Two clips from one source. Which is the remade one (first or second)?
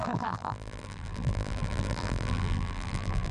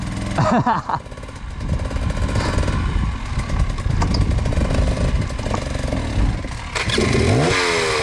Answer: first